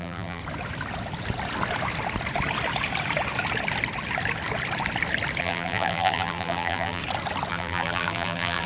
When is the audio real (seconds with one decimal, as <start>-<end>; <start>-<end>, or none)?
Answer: 0.4-5.4; 7.0-7.5